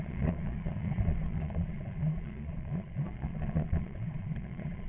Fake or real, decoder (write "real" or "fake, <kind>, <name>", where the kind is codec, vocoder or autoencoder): fake, vocoder, Vocos